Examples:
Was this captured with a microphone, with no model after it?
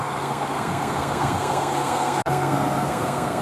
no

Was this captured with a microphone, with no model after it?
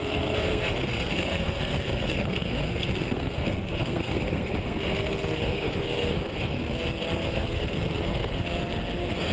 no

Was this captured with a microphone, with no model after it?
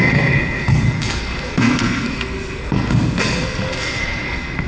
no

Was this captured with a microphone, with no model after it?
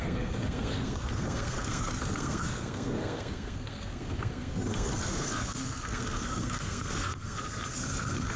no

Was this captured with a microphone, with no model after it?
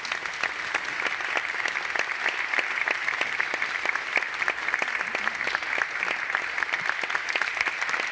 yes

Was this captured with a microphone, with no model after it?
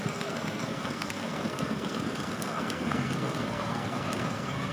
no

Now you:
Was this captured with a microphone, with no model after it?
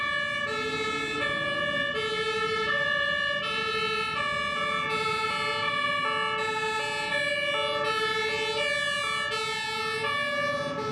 yes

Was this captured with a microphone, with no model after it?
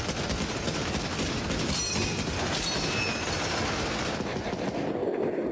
yes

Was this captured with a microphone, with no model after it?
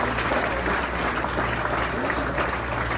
yes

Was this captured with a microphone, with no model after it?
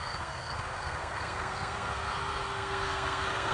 no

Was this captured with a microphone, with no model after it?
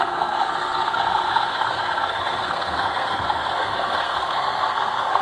no